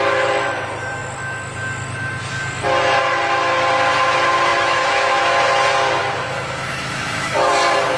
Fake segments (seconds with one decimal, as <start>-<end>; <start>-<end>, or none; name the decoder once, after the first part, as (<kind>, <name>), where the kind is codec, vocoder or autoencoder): 4.5-5.2 (autoencoder, DAC-VAE); 6.0-7.5